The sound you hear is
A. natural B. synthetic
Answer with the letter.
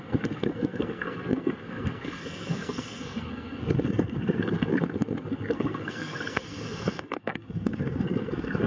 B